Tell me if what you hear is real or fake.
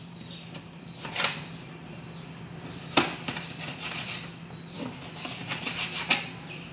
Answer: fake